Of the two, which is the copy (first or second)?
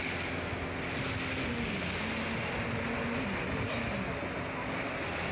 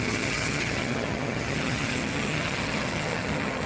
second